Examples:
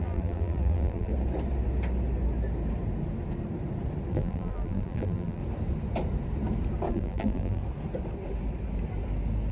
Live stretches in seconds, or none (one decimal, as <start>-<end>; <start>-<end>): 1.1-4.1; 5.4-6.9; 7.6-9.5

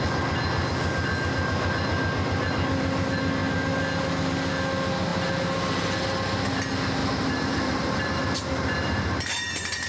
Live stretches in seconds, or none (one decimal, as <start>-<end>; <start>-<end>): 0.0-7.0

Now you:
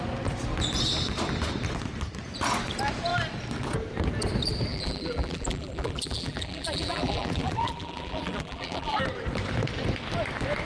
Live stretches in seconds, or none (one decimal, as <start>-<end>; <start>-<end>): 0.0-4.7; 9.0-10.6

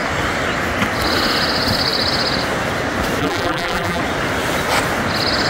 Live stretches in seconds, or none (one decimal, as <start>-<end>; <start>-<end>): 0.0-3.2; 4.0-5.5

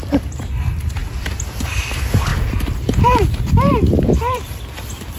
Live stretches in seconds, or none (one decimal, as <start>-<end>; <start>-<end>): 1.0-1.7

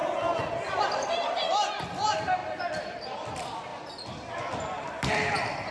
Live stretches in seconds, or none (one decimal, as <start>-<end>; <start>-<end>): 0.0-0.8; 2.4-2.9; 3.7-4.4

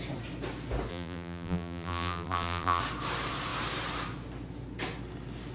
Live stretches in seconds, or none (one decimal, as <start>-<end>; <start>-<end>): 0.0-0.9; 2.8-5.5